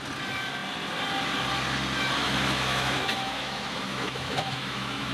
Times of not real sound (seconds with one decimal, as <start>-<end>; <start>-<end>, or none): 2.2-5.1